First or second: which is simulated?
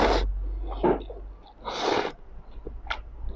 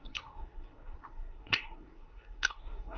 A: second